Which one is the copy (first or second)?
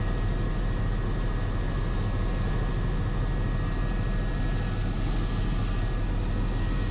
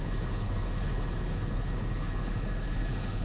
second